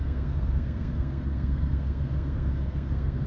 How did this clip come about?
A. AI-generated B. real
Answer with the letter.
A